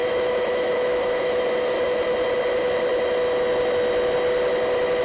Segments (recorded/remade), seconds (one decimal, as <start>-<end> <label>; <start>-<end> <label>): 0.0-1.4 remade; 1.4-5.0 recorded